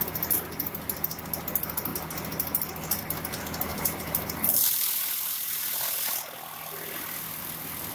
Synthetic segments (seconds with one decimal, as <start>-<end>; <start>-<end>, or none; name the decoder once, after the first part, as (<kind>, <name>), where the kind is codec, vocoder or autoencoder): 3.7-7.4 (vocoder, BigVGAN v2)